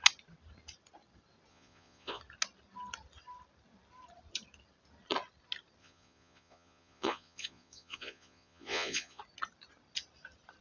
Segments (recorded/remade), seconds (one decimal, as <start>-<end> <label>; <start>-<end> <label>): 0.0-1.5 recorded; 1.5-2.2 remade; 2.2-5.8 recorded; 5.8-9.2 remade; 9.2-10.6 recorded